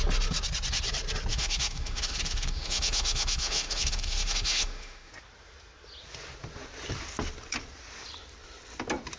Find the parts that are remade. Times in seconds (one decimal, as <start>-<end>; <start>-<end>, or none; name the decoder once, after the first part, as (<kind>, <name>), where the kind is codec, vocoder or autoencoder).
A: 1.3-5.1 (autoencoder, DAC-VAE)